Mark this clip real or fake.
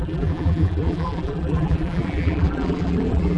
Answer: fake